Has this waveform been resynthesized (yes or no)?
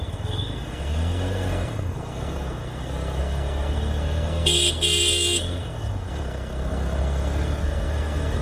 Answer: yes